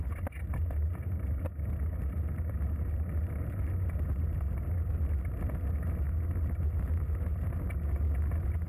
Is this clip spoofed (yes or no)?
no